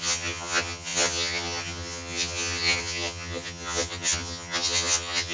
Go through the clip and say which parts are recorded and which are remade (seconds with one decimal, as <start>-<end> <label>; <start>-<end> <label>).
0.0-5.3 remade